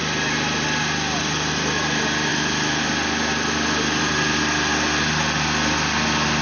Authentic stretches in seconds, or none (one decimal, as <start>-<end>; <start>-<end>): 0.0-6.4